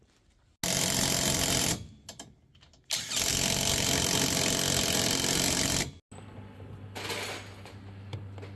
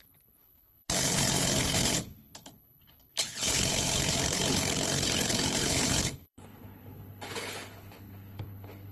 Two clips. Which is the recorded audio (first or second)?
first